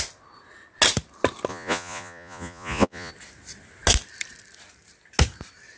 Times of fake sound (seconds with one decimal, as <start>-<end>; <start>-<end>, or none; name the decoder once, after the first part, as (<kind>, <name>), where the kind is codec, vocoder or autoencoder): 1.5-3.1 (vocoder, Vocos)